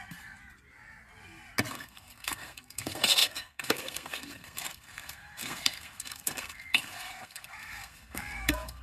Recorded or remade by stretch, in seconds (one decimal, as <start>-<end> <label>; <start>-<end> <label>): 0.0-0.4 remade; 0.4-1.7 recorded; 1.7-8.8 remade